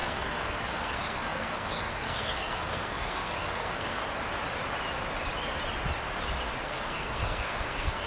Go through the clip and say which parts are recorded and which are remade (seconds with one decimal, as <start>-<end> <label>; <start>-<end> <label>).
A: 0.0-4.0 remade; 4.0-6.6 recorded; 6.6-8.1 remade